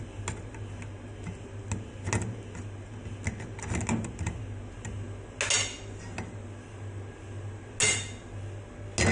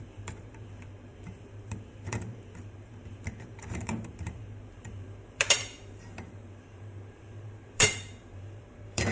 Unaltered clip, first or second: first